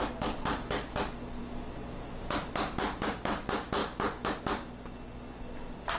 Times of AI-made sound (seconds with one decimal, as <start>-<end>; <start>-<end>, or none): none